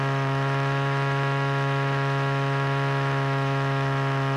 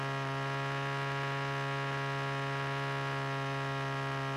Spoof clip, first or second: first